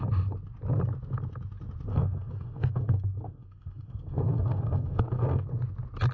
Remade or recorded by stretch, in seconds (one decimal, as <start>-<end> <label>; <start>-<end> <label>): 0.0-1.9 recorded; 1.9-5.4 remade; 5.4-6.1 recorded